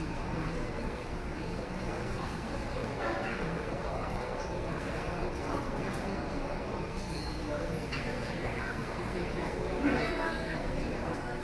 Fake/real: fake